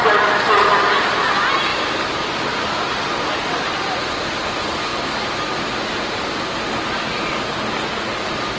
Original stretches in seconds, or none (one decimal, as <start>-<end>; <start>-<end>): 0.0-8.6